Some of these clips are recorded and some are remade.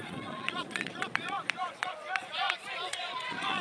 remade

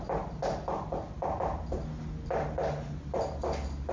recorded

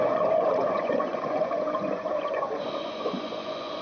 remade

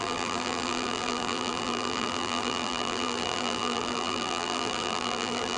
remade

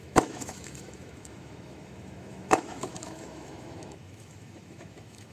remade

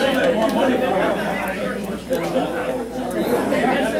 remade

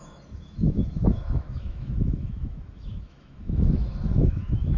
remade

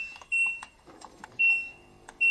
remade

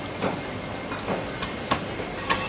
recorded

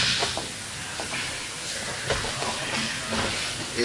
recorded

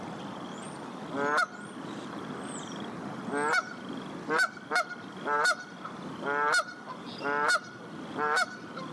recorded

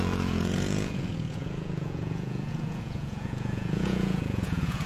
remade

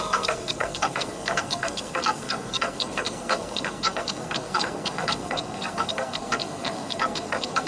remade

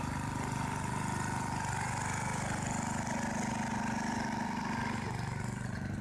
recorded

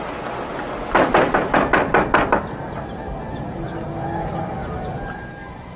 recorded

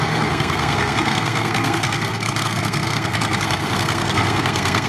remade